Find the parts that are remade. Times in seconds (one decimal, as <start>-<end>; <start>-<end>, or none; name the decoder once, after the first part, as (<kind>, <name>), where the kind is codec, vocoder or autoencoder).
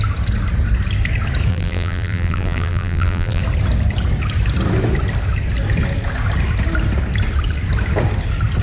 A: 1.5-3.4 (vocoder, BigVGAN v2)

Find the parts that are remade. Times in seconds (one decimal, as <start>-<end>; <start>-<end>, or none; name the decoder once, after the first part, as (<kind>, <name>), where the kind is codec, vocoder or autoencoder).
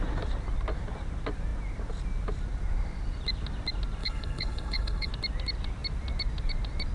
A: 4.0-5.1 (codec, HILCodec)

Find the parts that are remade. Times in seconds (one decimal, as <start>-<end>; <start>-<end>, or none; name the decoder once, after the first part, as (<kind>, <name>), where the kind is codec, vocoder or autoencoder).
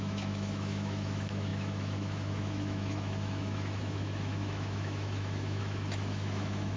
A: 0.0-6.8 (autoencoder, DAC-VAE)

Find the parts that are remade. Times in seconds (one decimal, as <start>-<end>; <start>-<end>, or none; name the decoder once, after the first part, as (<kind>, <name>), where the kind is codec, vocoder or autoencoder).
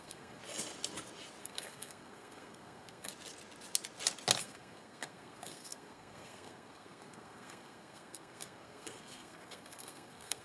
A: 0.0-0.4 (codec, SNAC); 1.4-3.1; 4.4-10.4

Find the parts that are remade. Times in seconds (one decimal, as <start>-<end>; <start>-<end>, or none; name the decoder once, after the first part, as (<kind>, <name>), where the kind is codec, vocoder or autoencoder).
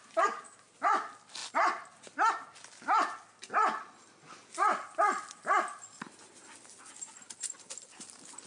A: none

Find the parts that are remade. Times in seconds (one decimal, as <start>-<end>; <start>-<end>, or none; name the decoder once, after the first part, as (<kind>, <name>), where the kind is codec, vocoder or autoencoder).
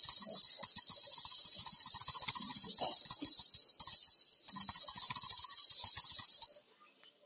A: none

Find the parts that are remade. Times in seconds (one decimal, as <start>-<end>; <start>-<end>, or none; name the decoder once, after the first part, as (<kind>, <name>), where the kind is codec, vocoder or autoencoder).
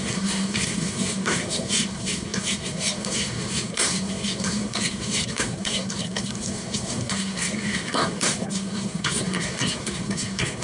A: 0.0-10.6 (codec, SNAC)